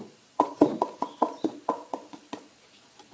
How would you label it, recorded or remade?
remade